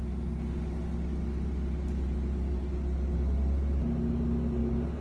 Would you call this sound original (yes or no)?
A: yes